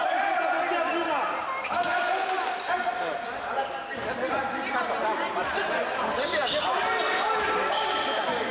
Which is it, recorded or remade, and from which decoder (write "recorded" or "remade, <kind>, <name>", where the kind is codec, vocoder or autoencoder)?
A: recorded